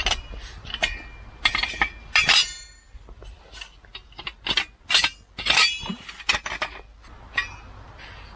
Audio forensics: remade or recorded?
recorded